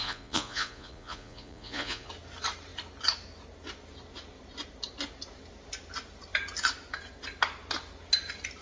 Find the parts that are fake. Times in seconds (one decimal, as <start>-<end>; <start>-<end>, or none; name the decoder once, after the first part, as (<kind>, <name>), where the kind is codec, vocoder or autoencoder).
0.0-2.1 (vocoder, Vocos)